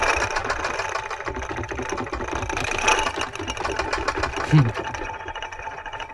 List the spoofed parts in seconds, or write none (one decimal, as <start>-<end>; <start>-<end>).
5.0-6.1